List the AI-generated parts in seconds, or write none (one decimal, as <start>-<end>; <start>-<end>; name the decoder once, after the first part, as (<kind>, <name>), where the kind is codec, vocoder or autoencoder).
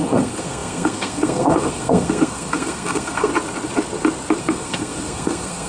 0.0-3.3 (codec, SNAC); 4.4-5.7